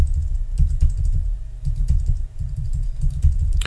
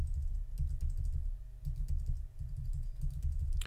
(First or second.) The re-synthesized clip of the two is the first